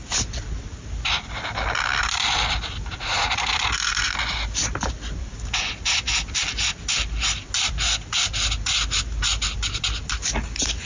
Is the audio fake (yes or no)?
no